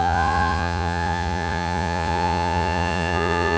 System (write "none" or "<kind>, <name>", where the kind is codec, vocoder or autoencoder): vocoder, Vocos